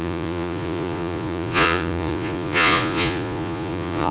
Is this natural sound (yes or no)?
no